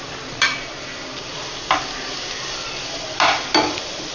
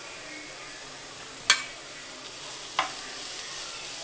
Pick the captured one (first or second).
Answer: second